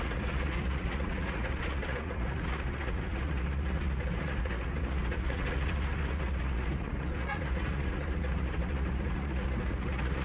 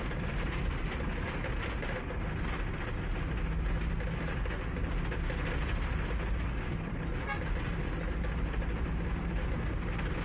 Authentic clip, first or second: second